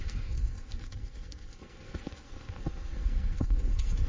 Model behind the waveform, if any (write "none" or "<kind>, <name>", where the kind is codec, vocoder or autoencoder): codec, SNAC